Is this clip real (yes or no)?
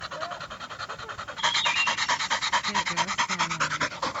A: yes